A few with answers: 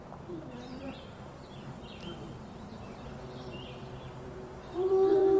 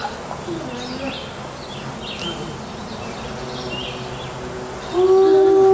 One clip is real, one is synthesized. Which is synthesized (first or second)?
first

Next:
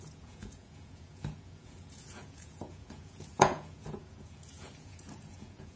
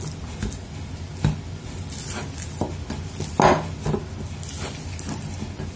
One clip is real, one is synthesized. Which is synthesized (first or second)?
first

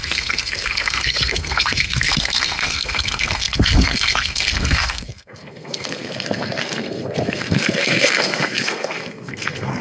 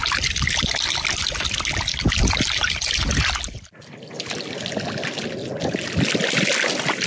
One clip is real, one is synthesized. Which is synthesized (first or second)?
first